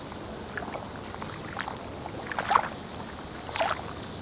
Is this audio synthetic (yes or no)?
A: no